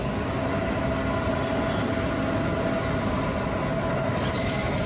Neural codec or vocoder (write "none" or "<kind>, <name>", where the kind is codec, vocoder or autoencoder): none